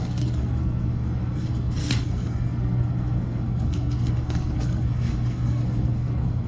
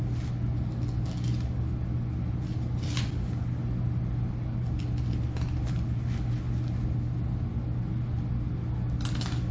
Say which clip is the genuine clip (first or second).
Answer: second